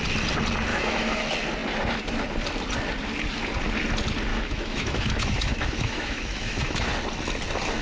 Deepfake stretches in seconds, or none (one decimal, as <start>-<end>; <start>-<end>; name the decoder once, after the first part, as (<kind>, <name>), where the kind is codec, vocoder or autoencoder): 0.7-1.2 (autoencoder, DAC-VAE); 4.3-6.9